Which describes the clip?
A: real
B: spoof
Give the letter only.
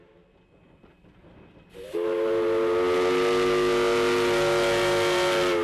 A